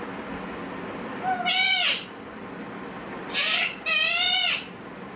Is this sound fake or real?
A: real